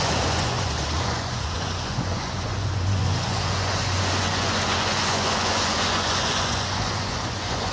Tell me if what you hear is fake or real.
fake